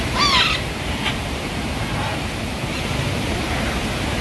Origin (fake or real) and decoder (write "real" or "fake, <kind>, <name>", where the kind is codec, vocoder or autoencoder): fake, vocoder, BigVGAN v2